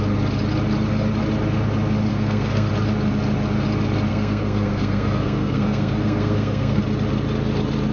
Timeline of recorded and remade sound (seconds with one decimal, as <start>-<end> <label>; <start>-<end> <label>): 0.0-2.1 recorded; 2.1-2.7 remade; 2.7-4.1 recorded; 4.1-6.8 remade; 6.8-7.9 recorded